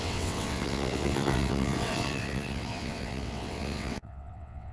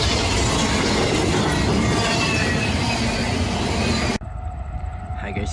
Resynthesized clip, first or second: first